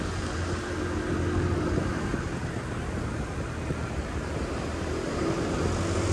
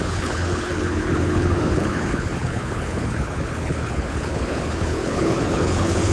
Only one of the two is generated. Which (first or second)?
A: second